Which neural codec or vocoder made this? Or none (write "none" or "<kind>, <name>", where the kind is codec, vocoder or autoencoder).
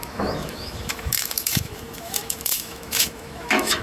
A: autoencoder, DAC-VAE